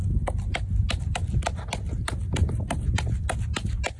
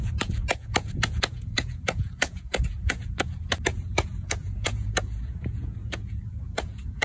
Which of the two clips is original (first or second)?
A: first